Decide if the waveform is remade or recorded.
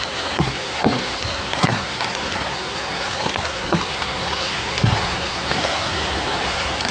remade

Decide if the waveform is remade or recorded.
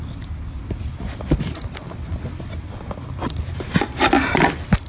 recorded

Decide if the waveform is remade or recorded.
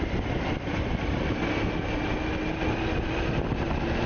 recorded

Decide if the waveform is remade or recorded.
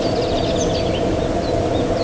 recorded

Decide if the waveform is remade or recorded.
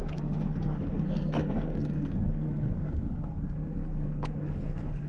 remade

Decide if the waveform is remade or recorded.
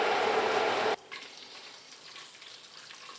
recorded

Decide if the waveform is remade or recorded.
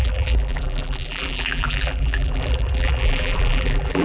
remade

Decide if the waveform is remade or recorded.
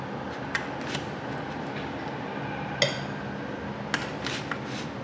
recorded